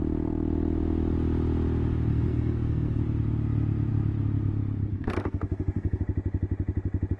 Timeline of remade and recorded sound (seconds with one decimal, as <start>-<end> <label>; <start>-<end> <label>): 0.0-2.1 recorded; 2.1-3.0 remade; 3.0-4.9 recorded; 4.9-6.0 remade; 6.0-7.2 recorded